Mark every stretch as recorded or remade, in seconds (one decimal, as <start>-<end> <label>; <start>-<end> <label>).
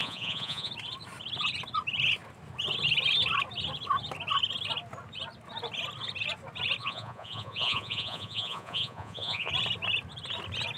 0.0-0.7 remade; 0.7-6.8 recorded; 6.8-9.5 remade; 9.5-10.8 recorded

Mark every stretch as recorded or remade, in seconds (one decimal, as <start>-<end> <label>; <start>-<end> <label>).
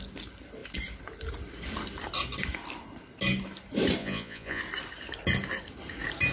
0.0-4.0 recorded; 4.0-4.6 remade; 4.6-6.3 recorded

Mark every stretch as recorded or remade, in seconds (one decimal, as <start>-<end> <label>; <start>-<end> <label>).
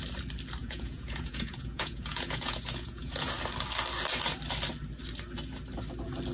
0.0-0.6 recorded; 0.6-3.3 remade; 3.3-6.3 recorded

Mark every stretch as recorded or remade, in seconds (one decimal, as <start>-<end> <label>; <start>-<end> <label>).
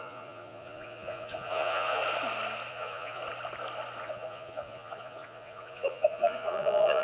0.0-2.0 remade; 2.0-2.7 recorded; 2.7-3.2 remade; 3.2-4.0 recorded; 4.0-7.0 remade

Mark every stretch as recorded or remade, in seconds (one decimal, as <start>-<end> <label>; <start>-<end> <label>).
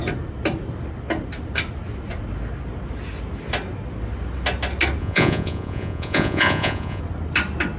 0.0-5.0 recorded; 5.0-7.0 remade; 7.0-7.8 recorded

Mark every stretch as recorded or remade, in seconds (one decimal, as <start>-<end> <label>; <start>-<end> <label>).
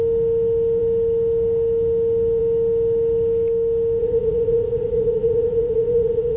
0.0-4.0 recorded; 4.0-6.4 remade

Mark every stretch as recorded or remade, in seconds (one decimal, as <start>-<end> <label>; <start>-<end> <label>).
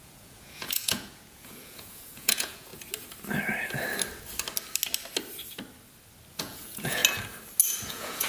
0.0-2.7 remade; 2.7-6.4 recorded; 6.4-7.0 remade; 7.0-7.9 recorded; 7.9-8.3 remade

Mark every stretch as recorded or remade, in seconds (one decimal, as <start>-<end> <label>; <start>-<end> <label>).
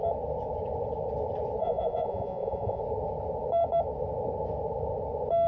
0.0-1.6 recorded; 1.6-2.8 remade; 2.8-5.5 recorded